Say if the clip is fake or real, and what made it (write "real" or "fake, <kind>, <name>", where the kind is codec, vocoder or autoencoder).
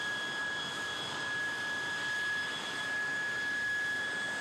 real